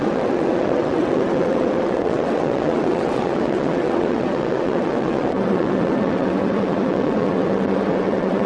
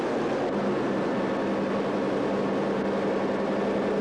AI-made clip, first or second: first